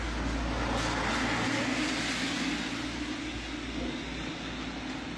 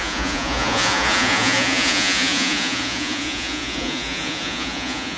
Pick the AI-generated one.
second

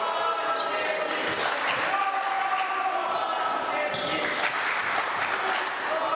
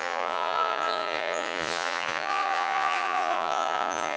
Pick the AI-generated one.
second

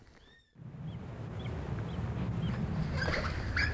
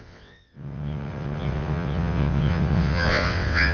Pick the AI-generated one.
second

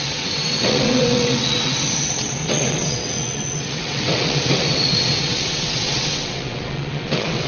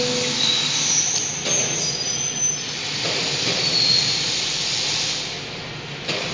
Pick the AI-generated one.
first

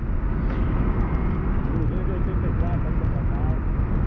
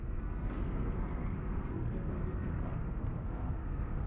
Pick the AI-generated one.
second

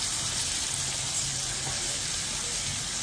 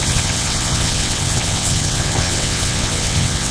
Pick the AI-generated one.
second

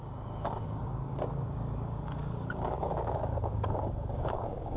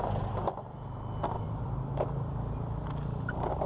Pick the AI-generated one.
first